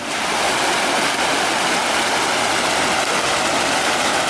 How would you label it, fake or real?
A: real